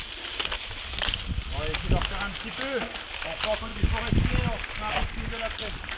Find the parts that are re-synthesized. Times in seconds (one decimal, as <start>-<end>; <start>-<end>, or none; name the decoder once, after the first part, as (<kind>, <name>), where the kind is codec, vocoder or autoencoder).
none